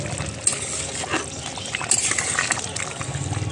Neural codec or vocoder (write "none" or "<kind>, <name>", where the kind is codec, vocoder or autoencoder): none